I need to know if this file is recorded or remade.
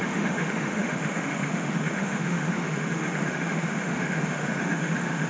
remade